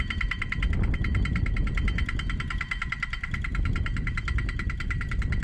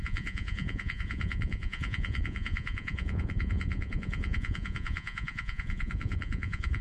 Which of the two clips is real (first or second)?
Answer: first